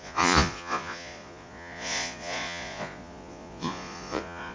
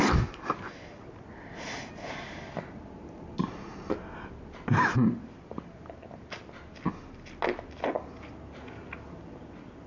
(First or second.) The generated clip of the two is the first